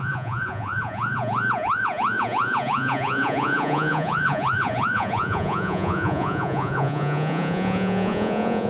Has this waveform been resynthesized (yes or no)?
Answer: yes